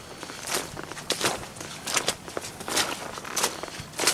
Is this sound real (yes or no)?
no